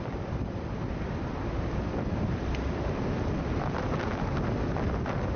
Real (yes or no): yes